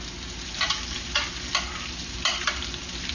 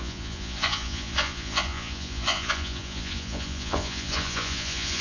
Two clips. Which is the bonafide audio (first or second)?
first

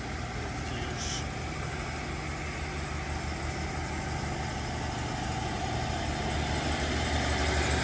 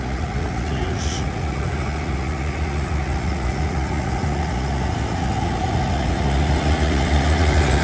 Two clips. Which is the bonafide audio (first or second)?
first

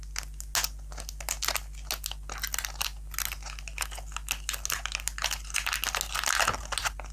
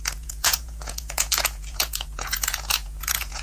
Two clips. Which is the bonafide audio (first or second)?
first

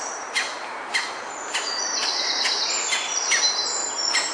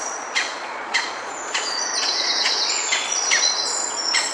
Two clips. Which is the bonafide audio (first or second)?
first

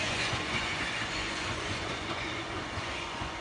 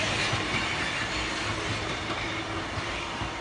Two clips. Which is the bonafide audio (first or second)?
second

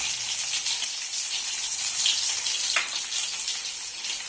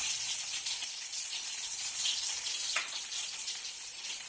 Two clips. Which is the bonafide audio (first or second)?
first